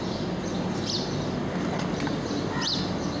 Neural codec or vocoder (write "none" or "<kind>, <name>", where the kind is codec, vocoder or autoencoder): none